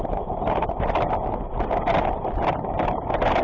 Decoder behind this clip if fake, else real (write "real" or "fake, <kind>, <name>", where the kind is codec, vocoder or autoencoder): real